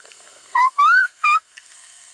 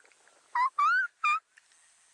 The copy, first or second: first